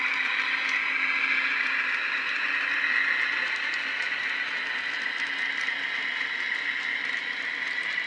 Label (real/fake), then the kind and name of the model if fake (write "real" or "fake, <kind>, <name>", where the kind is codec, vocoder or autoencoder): real